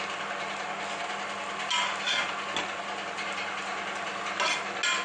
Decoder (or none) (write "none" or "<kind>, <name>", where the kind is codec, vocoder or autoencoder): none